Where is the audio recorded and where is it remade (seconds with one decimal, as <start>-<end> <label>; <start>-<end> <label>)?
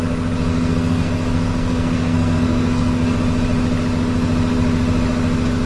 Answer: 0.0-0.5 recorded; 0.5-3.2 remade; 3.2-5.7 recorded